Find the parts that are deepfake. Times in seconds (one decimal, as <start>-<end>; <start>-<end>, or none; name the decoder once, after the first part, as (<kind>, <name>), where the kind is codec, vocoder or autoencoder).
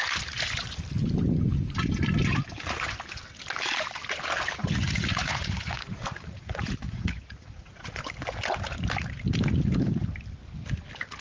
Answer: 4.6-8.0 (vocoder, Vocos)